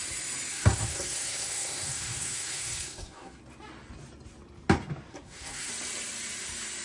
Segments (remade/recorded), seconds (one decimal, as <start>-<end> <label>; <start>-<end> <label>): 0.0-0.5 recorded; 0.5-3.4 remade; 3.4-5.1 recorded; 5.1-5.7 remade; 5.7-6.8 recorded